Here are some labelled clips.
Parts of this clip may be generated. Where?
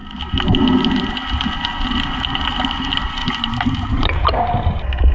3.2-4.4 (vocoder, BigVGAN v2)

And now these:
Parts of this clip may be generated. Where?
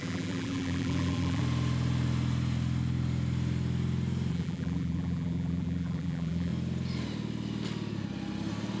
0.0-1.4 (vocoder, BigVGAN v2); 4.3-6.5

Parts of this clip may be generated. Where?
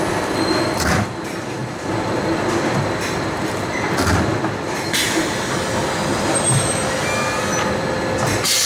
none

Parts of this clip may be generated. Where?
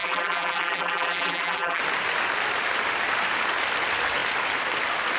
0.0-1.8 (vocoder, BigVGAN v2)